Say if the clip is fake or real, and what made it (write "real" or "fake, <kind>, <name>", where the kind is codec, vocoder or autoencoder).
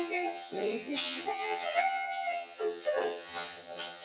fake, vocoder, HiFi-GAN